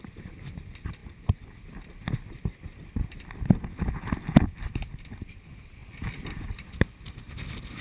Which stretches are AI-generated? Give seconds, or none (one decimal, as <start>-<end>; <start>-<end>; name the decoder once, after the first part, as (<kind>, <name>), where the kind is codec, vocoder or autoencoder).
none